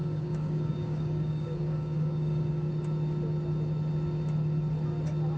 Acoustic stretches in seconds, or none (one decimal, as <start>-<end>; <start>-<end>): 2.7-5.4